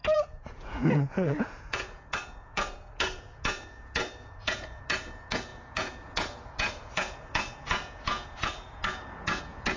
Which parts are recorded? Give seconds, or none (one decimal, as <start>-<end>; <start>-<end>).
none